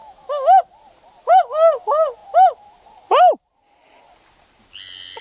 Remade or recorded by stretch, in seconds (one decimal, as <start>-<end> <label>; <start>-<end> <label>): 0.0-0.6 remade; 0.6-5.2 recorded

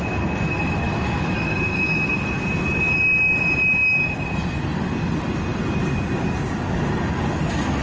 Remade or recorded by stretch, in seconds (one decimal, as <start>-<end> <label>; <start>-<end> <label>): 0.0-0.8 recorded; 0.8-2.2 remade; 2.2-7.8 recorded

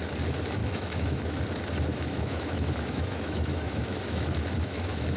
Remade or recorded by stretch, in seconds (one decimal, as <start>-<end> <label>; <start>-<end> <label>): 0.0-0.6 recorded; 0.6-1.4 remade; 1.4-1.9 recorded; 1.9-5.2 remade

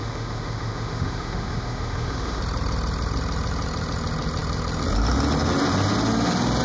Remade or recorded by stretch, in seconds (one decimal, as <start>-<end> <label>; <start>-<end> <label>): 0.0-2.4 remade; 2.4-6.6 recorded

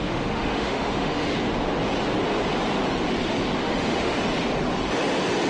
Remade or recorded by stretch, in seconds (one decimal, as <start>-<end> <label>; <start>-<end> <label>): 0.0-1.3 remade; 1.3-3.6 recorded; 3.6-4.2 remade; 4.2-5.5 recorded

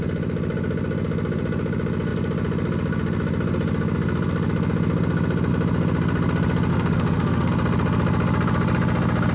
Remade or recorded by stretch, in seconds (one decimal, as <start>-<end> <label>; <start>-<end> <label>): 0.0-6.7 recorded; 6.7-7.5 remade; 7.5-9.3 recorded

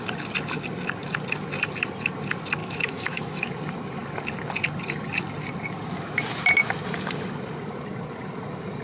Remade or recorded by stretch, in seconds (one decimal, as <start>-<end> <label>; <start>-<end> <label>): 0.0-2.6 recorded; 2.6-3.5 remade; 3.5-8.8 recorded

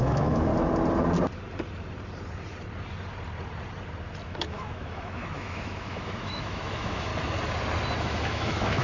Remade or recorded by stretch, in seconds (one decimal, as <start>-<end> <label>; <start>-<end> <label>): 0.0-0.5 remade; 0.5-4.3 recorded; 4.3-7.1 remade; 7.1-8.0 recorded; 8.0-8.8 remade